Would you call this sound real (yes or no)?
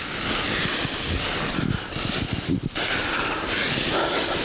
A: yes